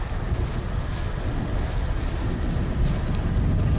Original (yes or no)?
yes